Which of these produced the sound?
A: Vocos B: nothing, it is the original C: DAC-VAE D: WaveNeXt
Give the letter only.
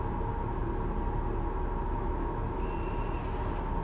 B